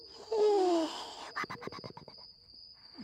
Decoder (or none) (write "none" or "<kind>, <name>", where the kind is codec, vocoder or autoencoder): none